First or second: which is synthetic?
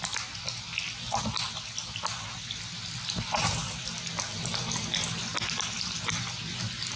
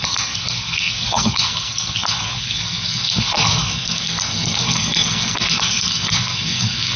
second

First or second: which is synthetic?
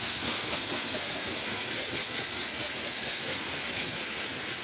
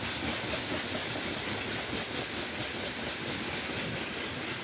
first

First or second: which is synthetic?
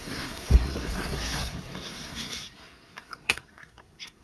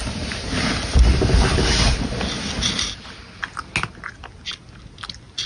first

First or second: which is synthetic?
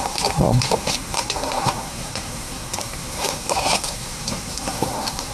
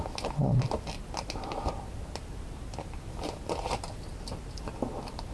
first